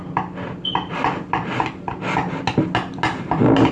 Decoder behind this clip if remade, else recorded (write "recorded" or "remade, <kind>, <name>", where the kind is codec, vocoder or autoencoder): recorded